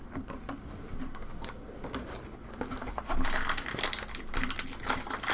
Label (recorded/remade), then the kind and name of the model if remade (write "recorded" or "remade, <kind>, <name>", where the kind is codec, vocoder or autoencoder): recorded